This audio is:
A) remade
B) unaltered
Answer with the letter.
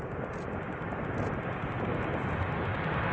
B